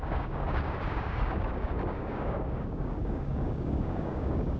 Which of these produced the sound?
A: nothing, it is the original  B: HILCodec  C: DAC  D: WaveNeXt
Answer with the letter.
C